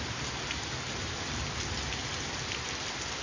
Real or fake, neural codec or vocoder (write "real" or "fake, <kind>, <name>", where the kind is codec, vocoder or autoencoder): real